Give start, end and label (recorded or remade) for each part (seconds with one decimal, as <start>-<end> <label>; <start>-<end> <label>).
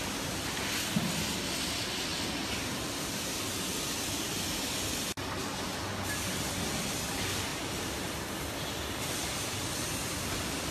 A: 0.0-7.5 recorded; 7.5-8.4 remade; 8.4-10.7 recorded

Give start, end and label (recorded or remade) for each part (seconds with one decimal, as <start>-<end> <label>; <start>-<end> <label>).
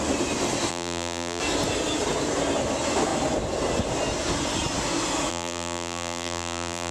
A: 0.0-0.7 recorded; 0.7-1.4 remade; 1.4-5.3 recorded; 5.3-6.9 remade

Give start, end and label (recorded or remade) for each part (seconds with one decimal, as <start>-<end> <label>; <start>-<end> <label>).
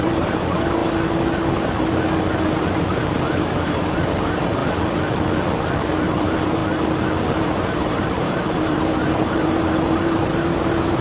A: 0.0-0.8 remade; 0.8-2.7 recorded; 2.7-4.6 remade; 4.6-6.0 recorded; 6.0-6.6 remade; 6.6-7.4 recorded; 7.4-11.0 remade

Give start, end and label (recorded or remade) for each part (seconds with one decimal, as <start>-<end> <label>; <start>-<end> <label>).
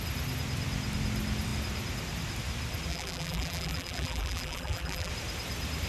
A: 0.0-2.9 recorded; 2.9-5.1 remade; 5.1-5.9 recorded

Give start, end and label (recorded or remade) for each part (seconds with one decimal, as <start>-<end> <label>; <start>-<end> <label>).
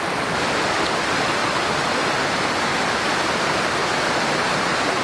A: 0.0-5.0 recorded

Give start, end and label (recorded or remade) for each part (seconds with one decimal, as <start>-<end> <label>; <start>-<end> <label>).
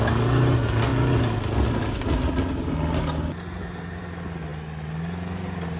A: 0.0-5.8 recorded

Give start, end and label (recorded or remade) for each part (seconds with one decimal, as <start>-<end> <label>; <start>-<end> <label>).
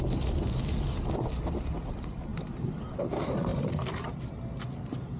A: 0.0-2.3 recorded; 2.3-3.0 remade; 3.0-3.5 recorded; 3.5-4.3 remade; 4.3-5.2 recorded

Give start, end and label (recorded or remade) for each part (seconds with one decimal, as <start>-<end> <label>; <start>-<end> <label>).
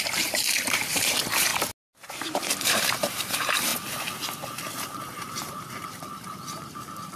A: 0.0-1.5 remade; 1.5-2.1 recorded; 2.1-3.7 remade; 3.7-4.8 recorded; 4.8-7.2 remade